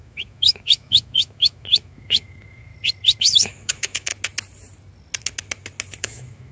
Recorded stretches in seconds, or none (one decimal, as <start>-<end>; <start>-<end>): 2.7-3.2; 4.1-6.0